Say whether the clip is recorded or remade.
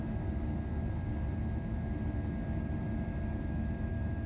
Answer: remade